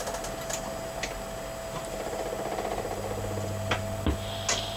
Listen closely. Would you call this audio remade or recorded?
recorded